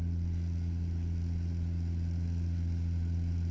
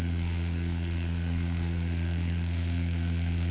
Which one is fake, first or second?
second